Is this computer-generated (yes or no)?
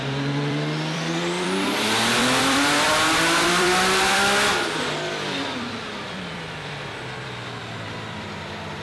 yes